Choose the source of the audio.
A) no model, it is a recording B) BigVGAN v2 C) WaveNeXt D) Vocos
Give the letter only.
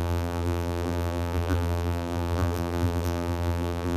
B